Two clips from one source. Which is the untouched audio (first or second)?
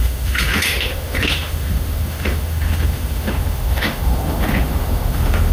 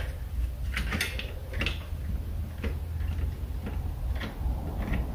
second